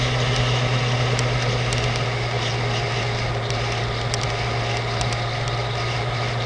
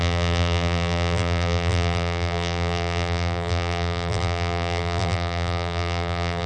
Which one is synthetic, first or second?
second